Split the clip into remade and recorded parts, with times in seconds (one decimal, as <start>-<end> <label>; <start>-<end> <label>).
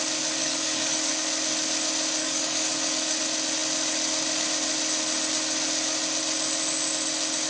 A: 0.0-0.4 recorded; 0.4-1.1 remade; 1.1-2.2 recorded; 2.2-3.2 remade; 3.2-7.5 recorded